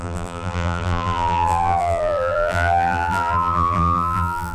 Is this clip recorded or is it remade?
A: remade